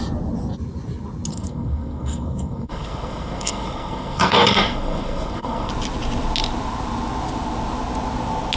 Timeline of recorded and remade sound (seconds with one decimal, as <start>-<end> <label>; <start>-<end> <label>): 0.0-1.3 recorded; 1.3-5.7 remade; 5.7-8.6 recorded